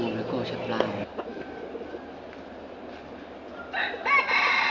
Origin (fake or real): real